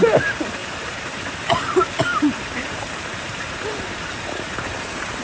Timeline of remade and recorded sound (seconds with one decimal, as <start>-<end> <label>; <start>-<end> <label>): 0.0-0.6 recorded; 0.6-1.1 remade; 1.1-2.1 recorded; 2.1-5.2 remade